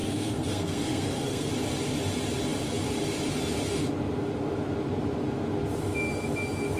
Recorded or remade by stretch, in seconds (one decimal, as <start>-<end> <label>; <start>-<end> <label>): 0.0-1.5 remade; 1.5-6.8 recorded